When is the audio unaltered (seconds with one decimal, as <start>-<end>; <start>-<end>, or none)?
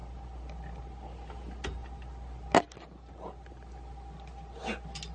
0.0-5.1